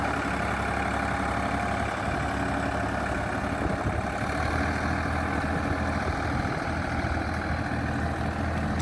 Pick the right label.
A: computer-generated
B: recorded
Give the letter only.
B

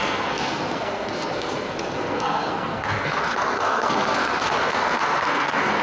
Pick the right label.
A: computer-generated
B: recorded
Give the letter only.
A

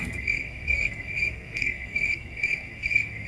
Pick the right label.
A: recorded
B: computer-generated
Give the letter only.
B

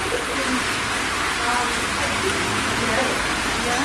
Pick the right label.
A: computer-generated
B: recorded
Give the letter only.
B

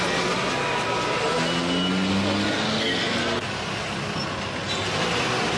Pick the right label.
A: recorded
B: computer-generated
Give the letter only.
A